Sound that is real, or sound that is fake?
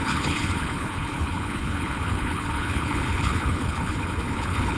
fake